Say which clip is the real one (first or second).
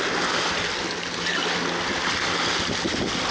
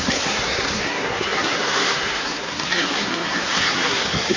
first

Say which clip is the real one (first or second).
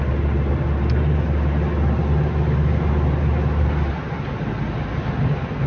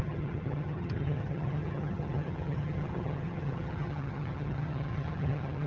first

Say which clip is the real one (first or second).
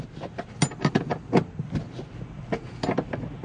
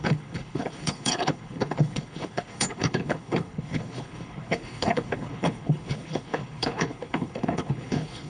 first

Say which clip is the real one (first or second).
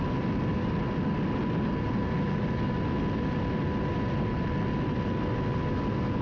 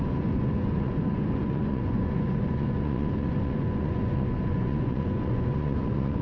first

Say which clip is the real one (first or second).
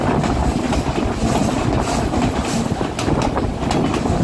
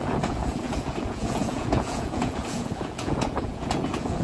first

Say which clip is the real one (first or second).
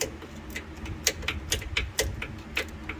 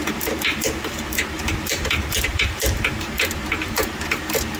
first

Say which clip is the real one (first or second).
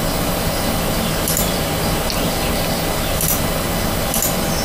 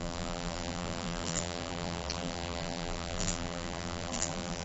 first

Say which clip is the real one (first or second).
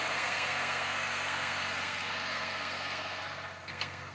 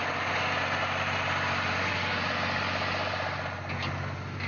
second